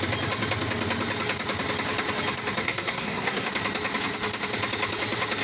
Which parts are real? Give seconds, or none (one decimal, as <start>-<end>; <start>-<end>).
0.0-2.6; 3.5-5.4